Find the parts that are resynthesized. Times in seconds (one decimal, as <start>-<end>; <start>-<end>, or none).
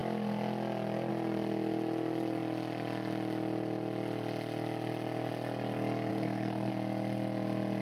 6.1-6.7